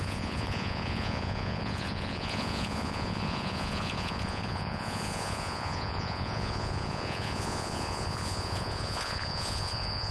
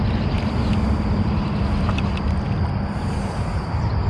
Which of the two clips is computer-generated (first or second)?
first